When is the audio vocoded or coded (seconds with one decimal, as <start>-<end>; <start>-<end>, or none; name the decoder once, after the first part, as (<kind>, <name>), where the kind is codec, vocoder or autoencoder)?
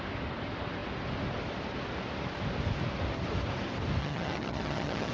4.0-5.1 (vocoder, HiFi-GAN)